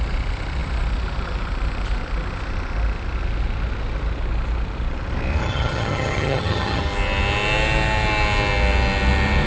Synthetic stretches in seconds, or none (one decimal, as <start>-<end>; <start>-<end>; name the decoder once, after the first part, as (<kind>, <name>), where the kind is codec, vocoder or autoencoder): 5.4-6.8 (vocoder, HiFi-GAN)

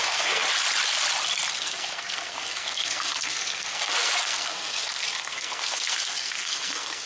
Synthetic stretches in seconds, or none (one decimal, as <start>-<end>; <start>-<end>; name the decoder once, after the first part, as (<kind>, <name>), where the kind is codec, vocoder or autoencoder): 0.0-0.4 (codec, SNAC); 1.6-7.1

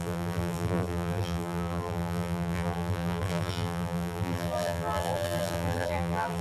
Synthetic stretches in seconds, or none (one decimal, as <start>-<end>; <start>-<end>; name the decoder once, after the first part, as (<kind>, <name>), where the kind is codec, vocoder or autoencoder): 0.0-6.4 (vocoder, BigVGAN v2)

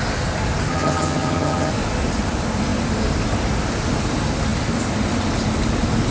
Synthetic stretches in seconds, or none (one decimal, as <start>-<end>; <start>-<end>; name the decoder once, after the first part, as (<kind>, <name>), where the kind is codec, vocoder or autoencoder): 0.7-1.7 (vocoder, HiFi-GAN)